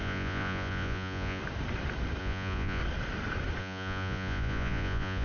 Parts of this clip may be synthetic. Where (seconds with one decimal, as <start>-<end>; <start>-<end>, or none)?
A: 0.0-1.4; 2.2-2.8; 3.6-5.2